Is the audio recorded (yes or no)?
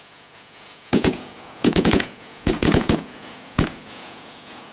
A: no